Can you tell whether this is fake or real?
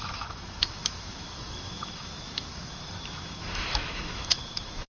fake